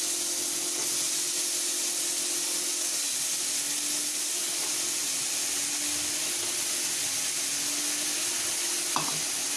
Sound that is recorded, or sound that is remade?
recorded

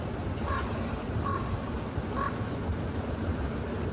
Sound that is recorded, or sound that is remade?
recorded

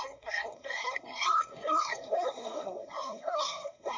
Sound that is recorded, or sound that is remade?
remade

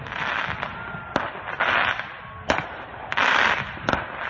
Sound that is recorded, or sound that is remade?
recorded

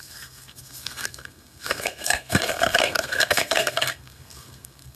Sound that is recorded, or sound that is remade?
remade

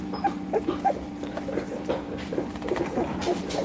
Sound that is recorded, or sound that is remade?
remade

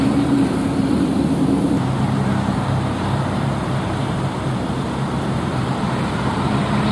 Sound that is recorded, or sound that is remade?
remade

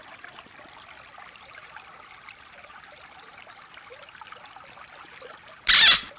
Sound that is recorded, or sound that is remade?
recorded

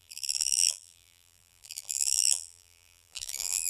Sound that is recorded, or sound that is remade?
remade